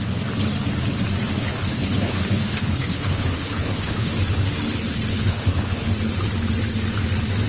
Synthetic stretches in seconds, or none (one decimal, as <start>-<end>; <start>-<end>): 1.5-4.1; 5.1-5.9